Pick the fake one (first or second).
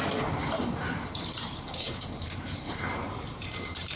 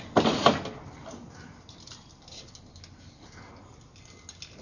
first